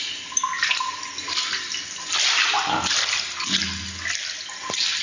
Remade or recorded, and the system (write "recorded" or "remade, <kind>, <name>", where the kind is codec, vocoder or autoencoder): recorded